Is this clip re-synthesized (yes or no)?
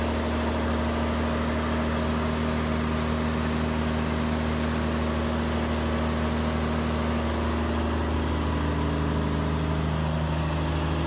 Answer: no